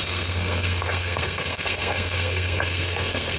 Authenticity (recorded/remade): remade